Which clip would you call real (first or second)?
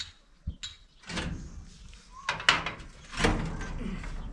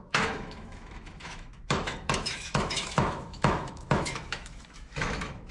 first